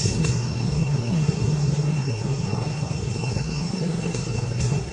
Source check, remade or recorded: remade